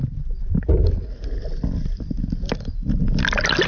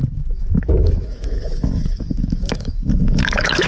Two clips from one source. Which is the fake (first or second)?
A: second